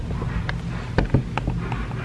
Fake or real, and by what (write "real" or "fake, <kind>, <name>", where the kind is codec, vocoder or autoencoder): real